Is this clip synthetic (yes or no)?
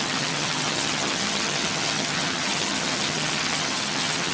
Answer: yes